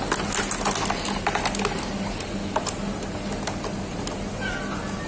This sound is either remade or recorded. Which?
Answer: recorded